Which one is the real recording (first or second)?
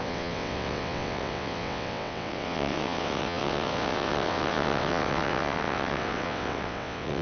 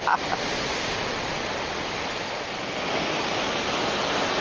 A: second